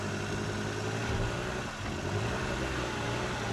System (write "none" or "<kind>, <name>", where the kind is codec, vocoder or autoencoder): none